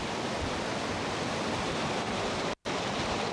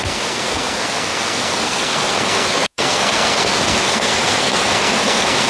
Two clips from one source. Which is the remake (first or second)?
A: second